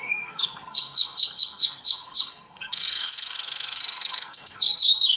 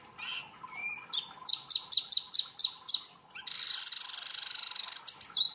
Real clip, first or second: second